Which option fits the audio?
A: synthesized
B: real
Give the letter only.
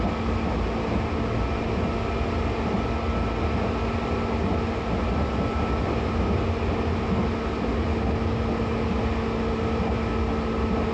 B